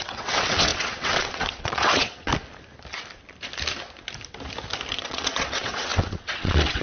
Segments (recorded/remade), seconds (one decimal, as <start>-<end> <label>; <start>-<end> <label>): 0.0-2.3 remade; 2.3-4.9 recorded; 4.9-6.8 remade